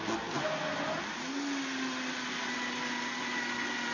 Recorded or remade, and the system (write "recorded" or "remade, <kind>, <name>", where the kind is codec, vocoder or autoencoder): recorded